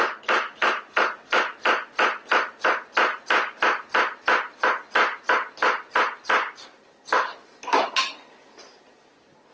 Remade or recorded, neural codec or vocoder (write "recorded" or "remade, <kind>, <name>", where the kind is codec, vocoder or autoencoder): recorded